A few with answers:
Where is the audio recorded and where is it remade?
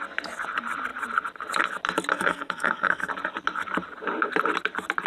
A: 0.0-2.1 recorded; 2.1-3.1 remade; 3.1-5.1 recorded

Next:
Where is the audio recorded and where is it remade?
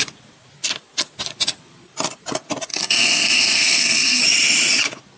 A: 0.0-2.7 recorded; 2.7-4.2 remade; 4.2-5.2 recorded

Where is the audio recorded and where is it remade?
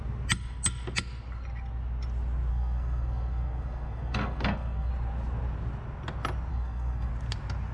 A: 0.0-2.5 recorded; 2.5-4.9 remade; 4.9-6.5 recorded; 6.5-7.1 remade; 7.1-7.7 recorded